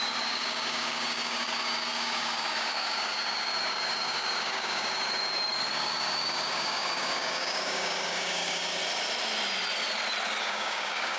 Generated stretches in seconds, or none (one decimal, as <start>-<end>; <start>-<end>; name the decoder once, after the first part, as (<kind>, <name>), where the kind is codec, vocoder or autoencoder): 0.0-8.8 (codec, DAC); 10.4-11.2